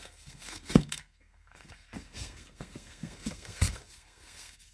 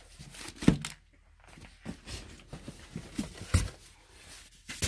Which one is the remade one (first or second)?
first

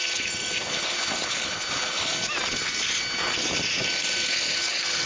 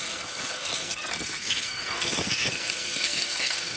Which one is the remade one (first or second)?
second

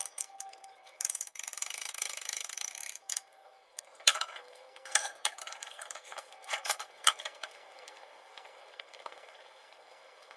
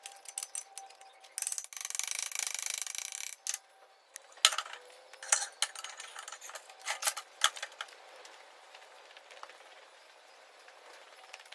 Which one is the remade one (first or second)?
first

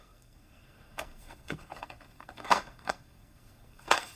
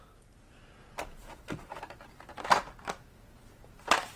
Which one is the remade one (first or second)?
first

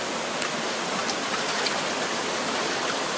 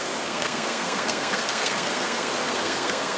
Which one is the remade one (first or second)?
second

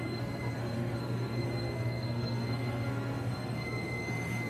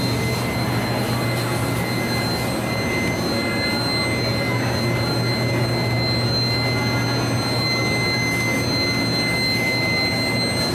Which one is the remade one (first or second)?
first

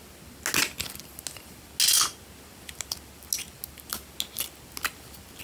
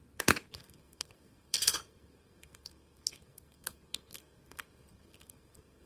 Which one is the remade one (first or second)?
second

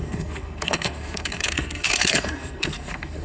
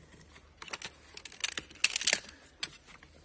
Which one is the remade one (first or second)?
first